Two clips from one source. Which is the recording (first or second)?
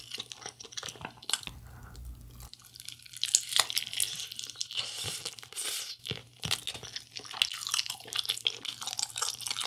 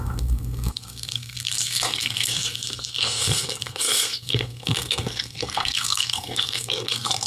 first